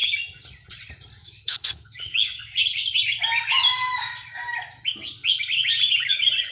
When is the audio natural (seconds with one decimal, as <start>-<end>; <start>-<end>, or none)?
0.0-1.2; 2.3-6.5